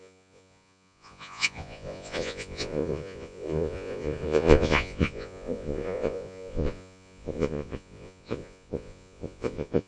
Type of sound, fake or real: fake